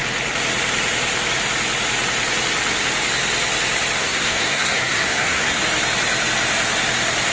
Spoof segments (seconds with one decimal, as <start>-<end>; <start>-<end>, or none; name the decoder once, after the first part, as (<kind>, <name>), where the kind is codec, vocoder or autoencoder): 4.0-5.6 (codec, SNAC)

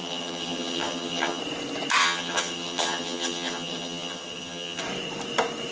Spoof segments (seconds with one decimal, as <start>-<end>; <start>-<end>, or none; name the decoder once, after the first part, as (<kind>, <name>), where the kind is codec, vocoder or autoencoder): 0.0-1.4 (vocoder, HiFi-GAN); 2.0-4.8

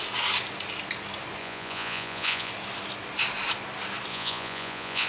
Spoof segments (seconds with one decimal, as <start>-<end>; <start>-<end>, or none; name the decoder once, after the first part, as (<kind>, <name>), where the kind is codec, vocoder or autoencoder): 1.4-2.5 (vocoder, Vocos); 4.1-5.1

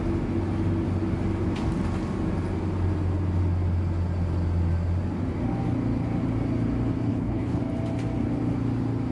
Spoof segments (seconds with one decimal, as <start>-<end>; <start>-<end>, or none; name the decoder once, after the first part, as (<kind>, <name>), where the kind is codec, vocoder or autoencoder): 7.1-7.6 (codec, HILCodec)